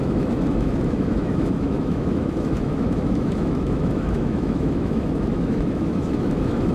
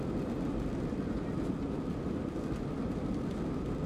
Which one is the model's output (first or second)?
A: first